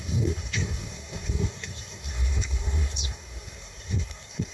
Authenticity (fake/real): fake